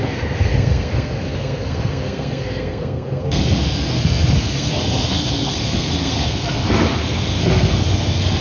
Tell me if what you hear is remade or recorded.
remade